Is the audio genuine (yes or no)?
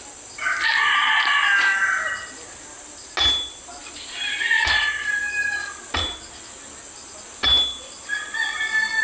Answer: yes